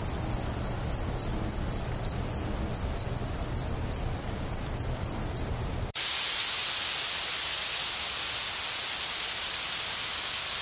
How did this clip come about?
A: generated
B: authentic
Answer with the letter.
B